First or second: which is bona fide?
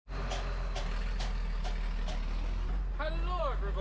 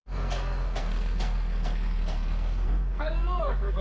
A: first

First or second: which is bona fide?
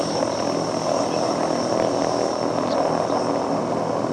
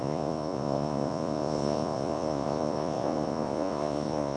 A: first